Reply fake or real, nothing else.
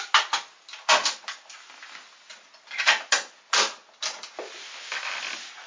real